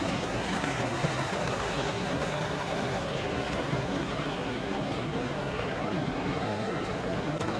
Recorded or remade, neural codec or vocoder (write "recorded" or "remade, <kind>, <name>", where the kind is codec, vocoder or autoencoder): remade, codec, SNAC